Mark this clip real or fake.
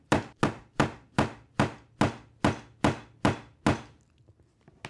real